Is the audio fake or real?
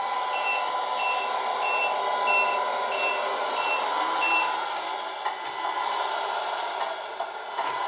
real